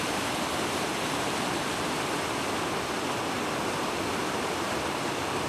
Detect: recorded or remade recorded